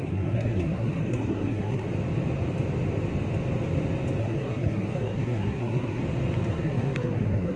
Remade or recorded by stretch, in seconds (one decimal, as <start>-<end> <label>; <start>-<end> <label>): 0.0-1.9 remade; 1.9-4.2 recorded; 4.2-6.0 remade; 6.0-6.5 recorded; 6.5-7.6 remade